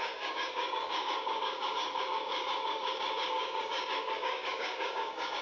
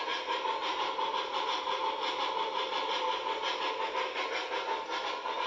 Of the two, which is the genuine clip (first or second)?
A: second